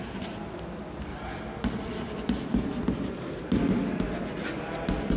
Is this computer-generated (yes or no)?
no